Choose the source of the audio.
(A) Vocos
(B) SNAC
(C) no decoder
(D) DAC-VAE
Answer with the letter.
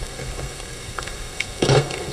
B